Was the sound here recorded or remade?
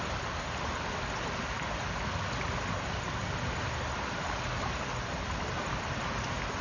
recorded